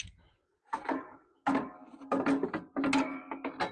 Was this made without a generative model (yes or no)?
yes